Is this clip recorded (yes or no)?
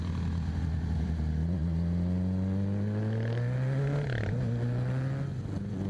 yes